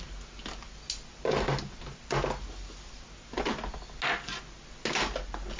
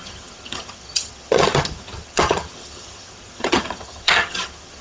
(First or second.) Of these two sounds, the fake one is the second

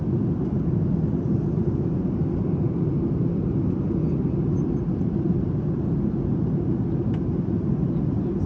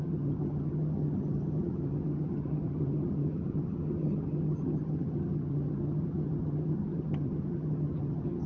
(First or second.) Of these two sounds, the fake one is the second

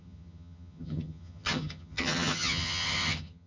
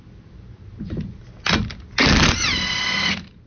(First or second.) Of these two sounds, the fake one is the first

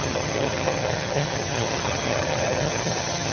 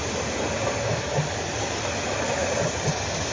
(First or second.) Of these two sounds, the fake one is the first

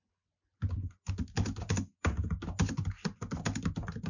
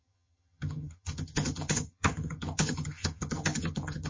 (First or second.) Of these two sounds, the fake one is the second